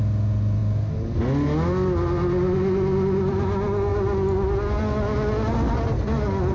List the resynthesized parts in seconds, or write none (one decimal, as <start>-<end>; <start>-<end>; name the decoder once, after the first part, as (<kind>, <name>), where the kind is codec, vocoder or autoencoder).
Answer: none